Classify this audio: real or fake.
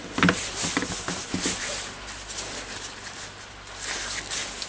real